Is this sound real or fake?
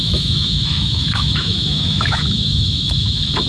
fake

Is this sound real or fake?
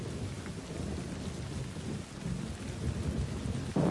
real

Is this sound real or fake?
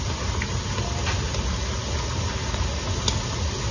real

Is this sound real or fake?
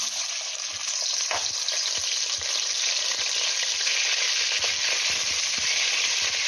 real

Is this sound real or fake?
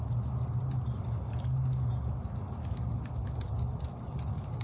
real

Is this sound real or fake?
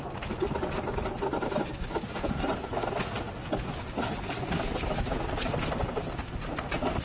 real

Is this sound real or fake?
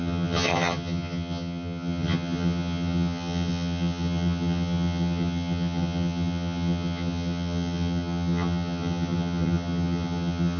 fake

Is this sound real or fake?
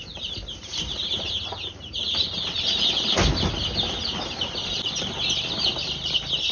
real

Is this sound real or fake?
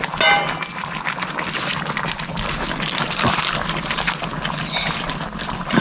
real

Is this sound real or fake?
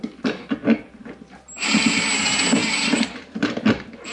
real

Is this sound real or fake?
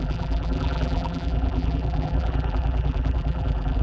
fake